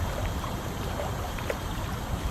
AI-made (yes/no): yes